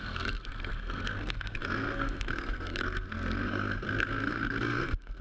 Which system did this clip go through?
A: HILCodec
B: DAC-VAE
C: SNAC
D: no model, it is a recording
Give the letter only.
C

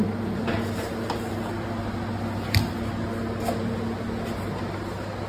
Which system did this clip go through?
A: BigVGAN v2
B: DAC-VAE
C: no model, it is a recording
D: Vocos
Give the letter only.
C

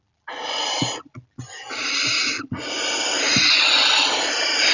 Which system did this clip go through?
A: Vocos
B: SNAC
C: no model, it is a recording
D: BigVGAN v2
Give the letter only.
C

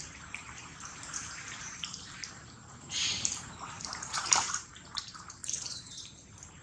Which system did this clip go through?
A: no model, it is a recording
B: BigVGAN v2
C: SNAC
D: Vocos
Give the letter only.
B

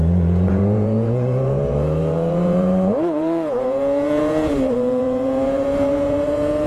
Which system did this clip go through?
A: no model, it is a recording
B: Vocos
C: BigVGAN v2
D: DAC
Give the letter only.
B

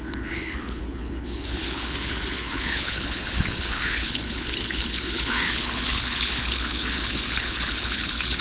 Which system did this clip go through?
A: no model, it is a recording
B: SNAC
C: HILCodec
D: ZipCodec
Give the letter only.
C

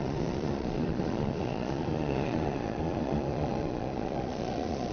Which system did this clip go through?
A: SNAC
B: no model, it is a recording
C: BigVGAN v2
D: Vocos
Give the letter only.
D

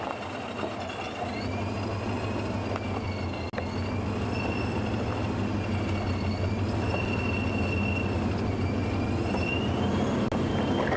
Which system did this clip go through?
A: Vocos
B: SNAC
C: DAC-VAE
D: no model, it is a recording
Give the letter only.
D